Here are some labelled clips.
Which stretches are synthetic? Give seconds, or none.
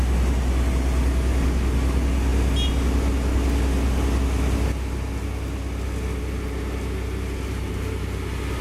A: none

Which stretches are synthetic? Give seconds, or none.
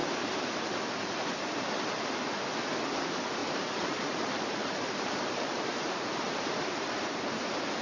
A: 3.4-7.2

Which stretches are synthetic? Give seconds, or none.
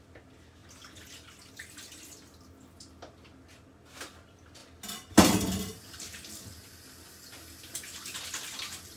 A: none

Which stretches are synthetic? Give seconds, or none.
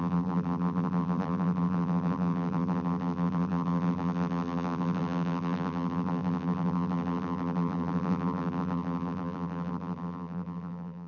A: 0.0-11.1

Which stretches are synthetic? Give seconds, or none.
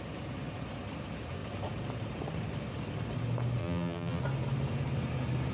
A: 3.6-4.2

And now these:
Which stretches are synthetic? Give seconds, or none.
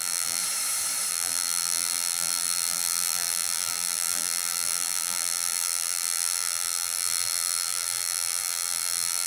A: 0.0-0.4; 1.1-9.3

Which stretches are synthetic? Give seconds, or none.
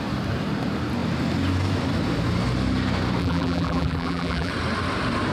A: 3.2-4.5